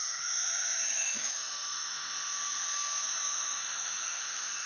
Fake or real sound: fake